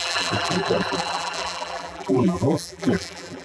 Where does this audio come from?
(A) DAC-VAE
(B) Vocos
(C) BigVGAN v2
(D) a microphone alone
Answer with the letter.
C